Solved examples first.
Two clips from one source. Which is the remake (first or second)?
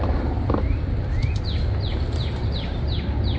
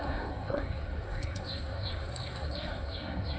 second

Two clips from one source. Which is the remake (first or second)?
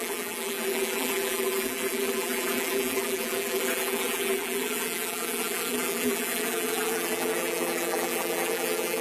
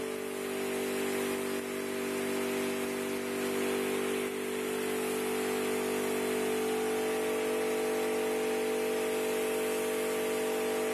first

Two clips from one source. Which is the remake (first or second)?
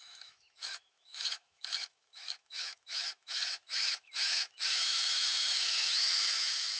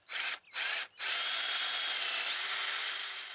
first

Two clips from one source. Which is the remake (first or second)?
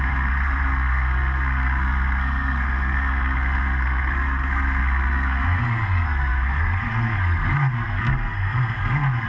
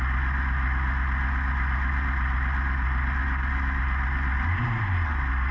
first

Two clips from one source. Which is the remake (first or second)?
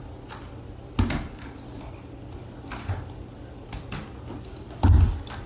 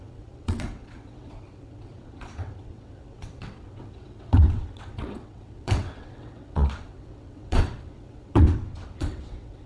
second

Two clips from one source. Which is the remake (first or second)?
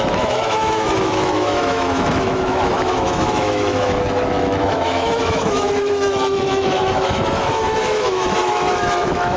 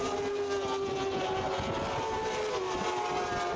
first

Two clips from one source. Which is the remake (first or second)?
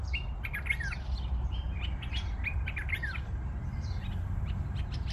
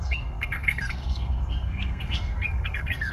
second